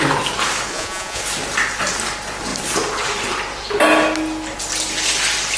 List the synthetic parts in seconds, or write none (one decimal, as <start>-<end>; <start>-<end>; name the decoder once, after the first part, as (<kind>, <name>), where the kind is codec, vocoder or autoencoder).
0.7-1.2 (vocoder, Vocos)